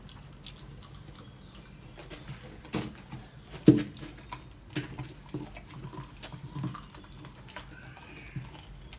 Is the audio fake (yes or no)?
no